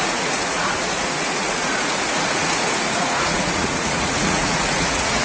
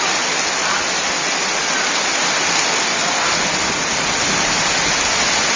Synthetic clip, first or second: first